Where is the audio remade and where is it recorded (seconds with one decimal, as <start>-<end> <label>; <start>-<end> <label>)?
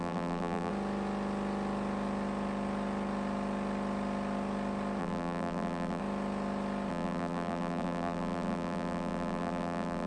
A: 0.0-0.7 remade; 0.7-5.0 recorded; 5.0-6.0 remade; 6.0-6.9 recorded; 6.9-10.1 remade